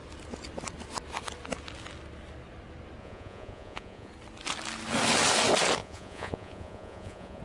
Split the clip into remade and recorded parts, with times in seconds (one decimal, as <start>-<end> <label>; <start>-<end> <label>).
0.0-3.0 recorded; 3.0-4.1 remade; 4.1-5.8 recorded; 5.8-7.4 remade